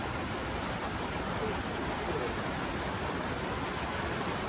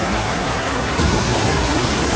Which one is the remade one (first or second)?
second